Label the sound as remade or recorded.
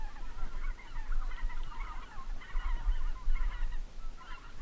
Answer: recorded